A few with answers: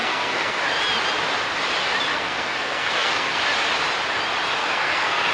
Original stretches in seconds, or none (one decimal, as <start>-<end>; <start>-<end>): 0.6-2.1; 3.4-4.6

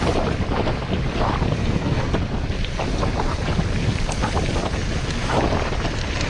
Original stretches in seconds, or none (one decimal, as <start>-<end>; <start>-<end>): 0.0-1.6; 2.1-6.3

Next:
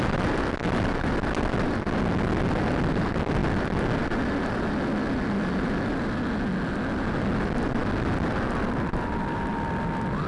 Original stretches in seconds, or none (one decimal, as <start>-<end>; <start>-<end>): 0.0-10.3